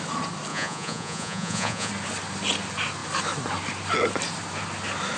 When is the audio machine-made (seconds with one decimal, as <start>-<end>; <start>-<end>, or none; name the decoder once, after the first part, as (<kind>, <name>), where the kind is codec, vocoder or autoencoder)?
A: 0.5-1.9 (vocoder, Vocos)